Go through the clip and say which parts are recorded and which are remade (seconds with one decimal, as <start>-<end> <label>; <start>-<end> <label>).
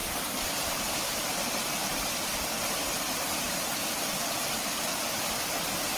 0.0-1.5 remade; 1.5-3.8 recorded; 3.8-4.8 remade; 4.8-6.0 recorded